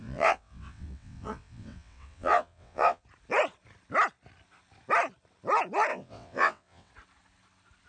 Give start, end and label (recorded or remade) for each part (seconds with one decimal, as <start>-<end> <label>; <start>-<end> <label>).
0.0-3.0 remade; 3.0-5.9 recorded; 5.9-6.9 remade; 6.9-7.9 recorded